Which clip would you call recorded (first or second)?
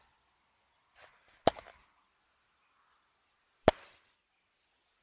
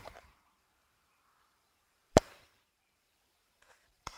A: first